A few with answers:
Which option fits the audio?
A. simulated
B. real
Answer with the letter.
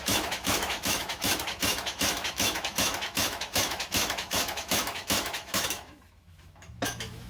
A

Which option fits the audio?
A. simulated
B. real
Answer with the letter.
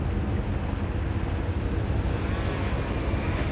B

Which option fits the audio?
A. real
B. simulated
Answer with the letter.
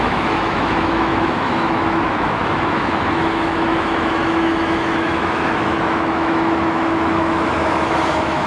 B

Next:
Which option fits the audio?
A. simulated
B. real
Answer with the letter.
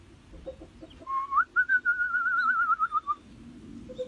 B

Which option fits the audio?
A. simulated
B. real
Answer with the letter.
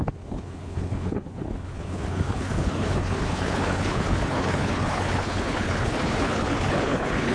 A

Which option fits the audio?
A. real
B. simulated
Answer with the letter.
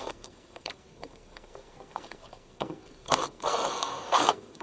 B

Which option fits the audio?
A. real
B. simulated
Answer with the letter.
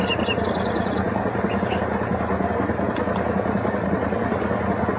A